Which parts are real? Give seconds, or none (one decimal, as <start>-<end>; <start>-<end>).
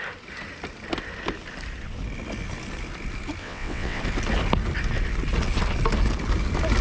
0.0-3.4; 4.0-6.8